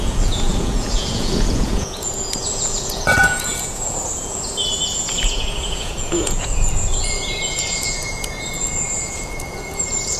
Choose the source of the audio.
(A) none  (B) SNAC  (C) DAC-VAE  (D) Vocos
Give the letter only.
D